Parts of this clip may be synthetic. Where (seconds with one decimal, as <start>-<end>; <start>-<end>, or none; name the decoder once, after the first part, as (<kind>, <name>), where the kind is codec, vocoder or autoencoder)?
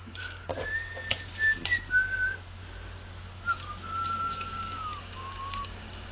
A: 0.0-0.5 (codec, DAC); 4.2-6.1